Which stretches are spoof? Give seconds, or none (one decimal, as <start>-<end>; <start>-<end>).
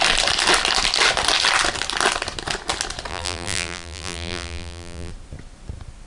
3.1-5.1